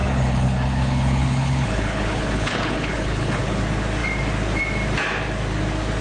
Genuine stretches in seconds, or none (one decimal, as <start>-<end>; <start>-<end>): 3.6-6.0